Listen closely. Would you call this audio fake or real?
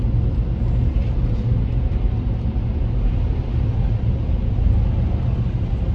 real